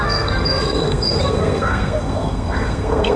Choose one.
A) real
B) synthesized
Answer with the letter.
B